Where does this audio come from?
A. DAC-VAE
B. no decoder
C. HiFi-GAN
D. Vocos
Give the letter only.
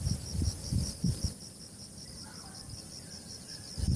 B